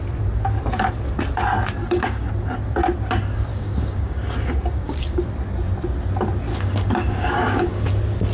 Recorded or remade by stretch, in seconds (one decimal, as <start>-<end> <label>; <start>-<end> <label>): 0.0-1.8 recorded; 1.8-2.3 remade; 2.3-3.5 recorded; 3.5-5.2 remade; 5.2-6.5 recorded; 6.5-7.9 remade; 7.9-8.3 recorded

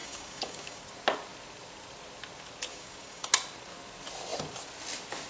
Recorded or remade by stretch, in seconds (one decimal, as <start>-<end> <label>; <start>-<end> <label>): 0.0-0.8 remade; 0.8-2.7 recorded; 2.7-3.3 remade; 3.3-5.3 recorded

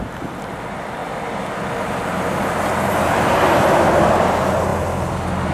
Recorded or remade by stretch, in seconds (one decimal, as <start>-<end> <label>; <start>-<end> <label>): 0.0-5.5 recorded

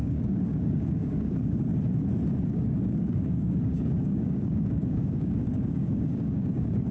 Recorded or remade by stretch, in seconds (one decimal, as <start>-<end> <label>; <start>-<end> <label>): 0.0-1.7 remade; 1.7-2.5 recorded; 2.5-6.9 remade

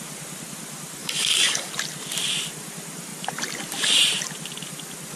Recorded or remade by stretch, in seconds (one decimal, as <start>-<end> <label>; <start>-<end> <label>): 0.0-1.0 recorded; 1.0-1.7 remade; 1.7-5.2 recorded

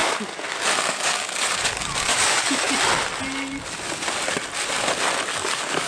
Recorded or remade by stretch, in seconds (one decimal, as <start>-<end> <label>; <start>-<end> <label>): 0.0-2.7 remade; 2.7-5.3 recorded; 5.3-5.9 remade